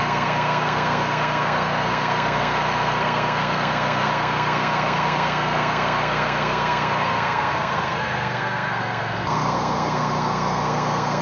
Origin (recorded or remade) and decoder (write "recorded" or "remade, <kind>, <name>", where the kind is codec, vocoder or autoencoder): remade, codec, SNAC